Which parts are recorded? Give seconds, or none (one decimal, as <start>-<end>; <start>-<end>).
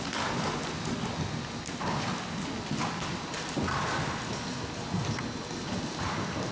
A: 0.0-6.5